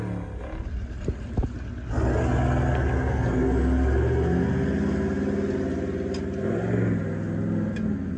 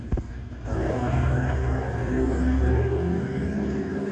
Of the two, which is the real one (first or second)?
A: first